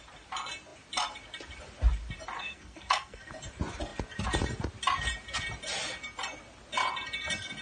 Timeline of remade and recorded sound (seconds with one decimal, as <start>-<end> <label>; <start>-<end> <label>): 0.0-2.4 recorded; 2.4-3.3 remade; 3.3-7.6 recorded